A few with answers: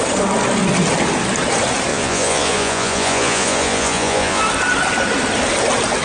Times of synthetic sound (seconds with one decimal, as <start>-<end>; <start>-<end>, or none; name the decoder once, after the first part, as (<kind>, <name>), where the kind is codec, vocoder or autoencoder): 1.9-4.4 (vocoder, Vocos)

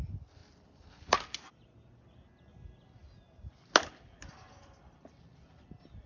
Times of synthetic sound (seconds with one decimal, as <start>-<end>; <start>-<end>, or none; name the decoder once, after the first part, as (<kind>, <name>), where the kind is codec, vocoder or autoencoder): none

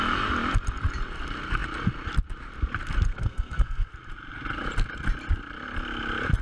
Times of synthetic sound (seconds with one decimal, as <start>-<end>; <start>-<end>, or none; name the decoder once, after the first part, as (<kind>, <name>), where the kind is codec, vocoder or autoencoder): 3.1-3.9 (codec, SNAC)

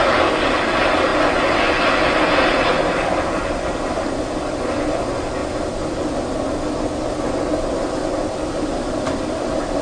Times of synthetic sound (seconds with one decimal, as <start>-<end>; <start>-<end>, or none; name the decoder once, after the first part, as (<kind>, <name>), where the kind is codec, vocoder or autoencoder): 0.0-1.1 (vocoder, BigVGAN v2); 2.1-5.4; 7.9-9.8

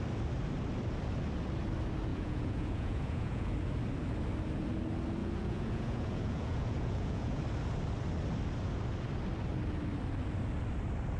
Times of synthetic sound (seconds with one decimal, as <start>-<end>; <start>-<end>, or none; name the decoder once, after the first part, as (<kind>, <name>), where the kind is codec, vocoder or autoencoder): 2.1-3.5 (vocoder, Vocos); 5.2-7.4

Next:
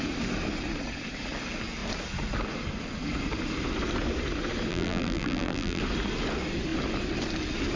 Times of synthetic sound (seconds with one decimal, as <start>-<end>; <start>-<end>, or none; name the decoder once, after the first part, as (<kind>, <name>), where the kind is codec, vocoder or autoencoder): 4.7-5.8 (vocoder, BigVGAN v2)